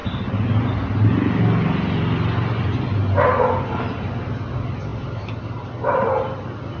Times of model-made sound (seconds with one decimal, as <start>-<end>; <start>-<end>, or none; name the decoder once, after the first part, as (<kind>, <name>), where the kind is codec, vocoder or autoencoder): 4.9-5.7 (vocoder, BigVGAN v2)